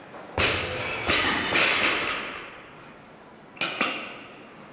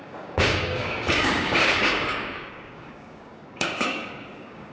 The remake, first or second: second